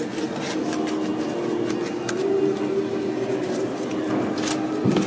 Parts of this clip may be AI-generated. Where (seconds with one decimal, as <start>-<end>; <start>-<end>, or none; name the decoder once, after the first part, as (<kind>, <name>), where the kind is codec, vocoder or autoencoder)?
none